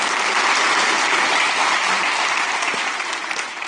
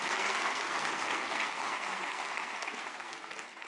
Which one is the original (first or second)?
first